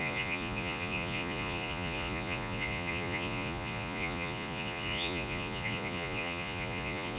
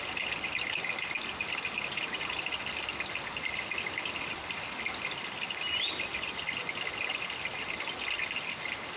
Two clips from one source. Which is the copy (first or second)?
first